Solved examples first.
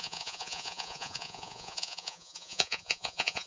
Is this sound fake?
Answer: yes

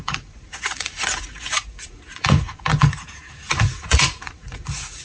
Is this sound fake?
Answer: yes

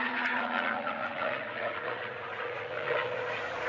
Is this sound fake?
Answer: yes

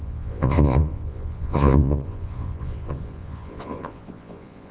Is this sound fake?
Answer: yes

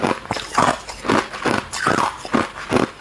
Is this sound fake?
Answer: no